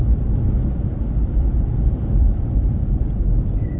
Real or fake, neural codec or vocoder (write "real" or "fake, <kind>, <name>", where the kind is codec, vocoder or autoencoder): fake, vocoder, BigVGAN v2